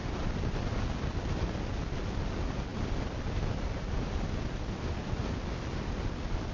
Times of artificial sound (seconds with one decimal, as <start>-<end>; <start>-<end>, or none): none